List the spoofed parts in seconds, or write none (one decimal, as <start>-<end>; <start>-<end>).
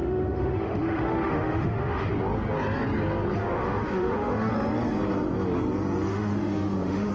0.0-2.1; 3.4-4.5; 6.1-7.1